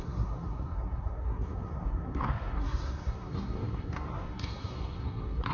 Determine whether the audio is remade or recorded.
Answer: remade